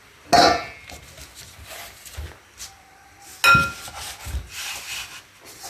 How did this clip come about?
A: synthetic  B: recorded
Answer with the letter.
B